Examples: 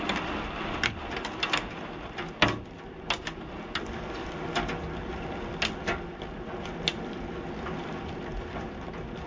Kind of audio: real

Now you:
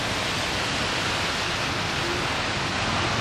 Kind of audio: real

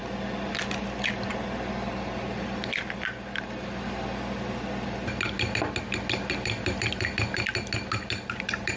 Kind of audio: real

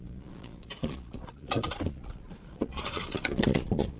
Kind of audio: fake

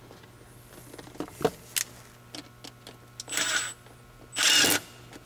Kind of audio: real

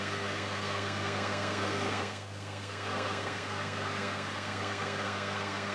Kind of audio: fake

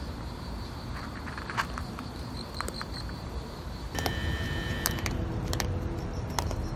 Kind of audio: fake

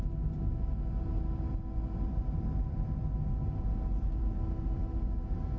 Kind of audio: real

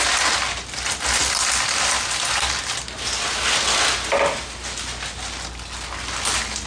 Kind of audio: real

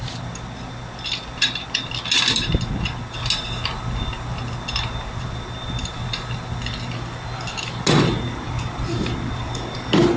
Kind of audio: real